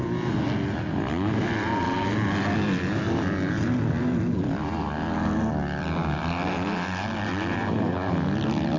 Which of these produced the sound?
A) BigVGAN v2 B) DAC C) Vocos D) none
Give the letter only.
D